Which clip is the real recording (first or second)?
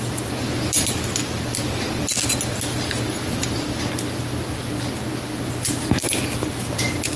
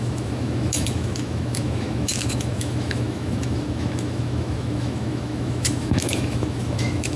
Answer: first